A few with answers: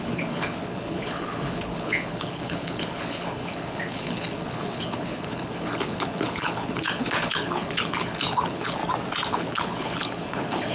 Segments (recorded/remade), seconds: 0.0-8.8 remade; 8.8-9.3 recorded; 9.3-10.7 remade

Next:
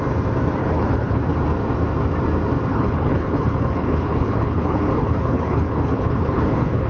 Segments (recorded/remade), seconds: 0.0-0.6 recorded; 0.6-1.2 remade; 1.2-2.7 recorded; 2.7-6.9 remade

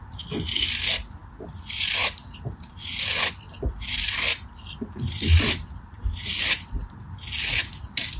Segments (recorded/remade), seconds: 0.0-8.2 recorded